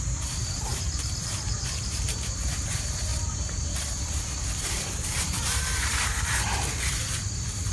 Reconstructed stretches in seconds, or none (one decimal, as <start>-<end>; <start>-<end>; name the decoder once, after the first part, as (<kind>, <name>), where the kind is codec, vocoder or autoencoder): 0.0-7.7 (vocoder, BigVGAN v2)